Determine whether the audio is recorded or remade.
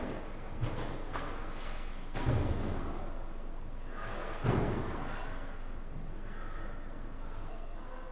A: remade